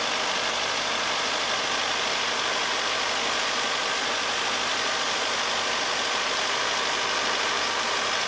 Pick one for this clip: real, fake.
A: real